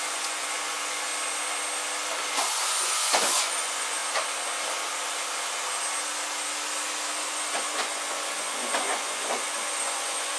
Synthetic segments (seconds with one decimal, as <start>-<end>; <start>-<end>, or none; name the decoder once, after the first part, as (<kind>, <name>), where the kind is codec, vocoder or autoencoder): 0.0-1.1 (vocoder, Vocos); 2.3-4.0; 7.1-10.4